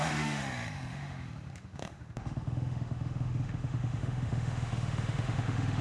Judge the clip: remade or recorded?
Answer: remade